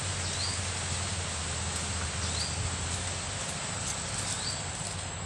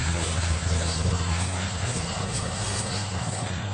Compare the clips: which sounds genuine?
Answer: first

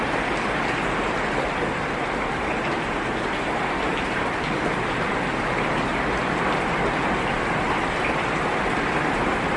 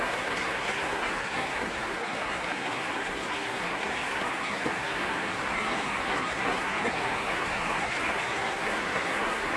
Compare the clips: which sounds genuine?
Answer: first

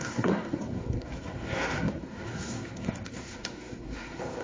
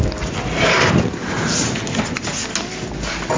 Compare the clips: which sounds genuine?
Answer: second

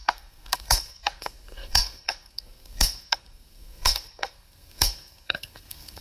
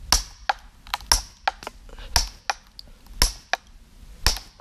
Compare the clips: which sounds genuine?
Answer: second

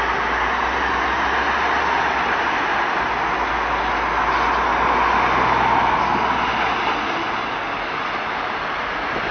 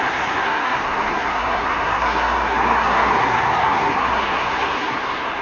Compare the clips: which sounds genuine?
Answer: first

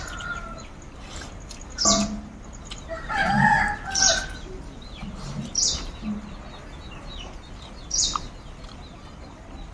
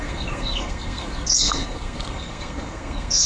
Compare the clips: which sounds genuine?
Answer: first